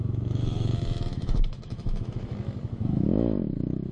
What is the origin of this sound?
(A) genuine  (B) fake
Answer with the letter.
B